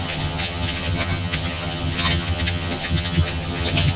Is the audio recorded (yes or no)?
no